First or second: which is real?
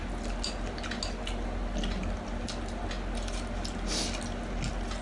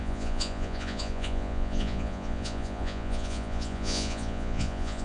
first